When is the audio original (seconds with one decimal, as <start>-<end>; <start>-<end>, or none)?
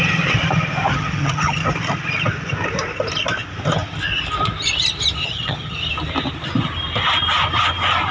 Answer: 0.0-0.9; 1.6-5.2; 5.8-8.1